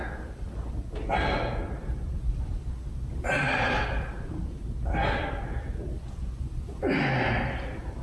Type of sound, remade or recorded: recorded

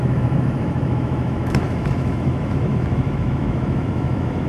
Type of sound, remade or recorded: remade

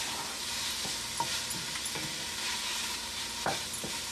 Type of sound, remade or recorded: recorded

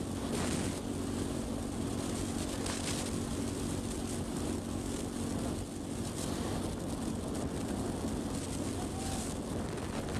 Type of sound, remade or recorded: recorded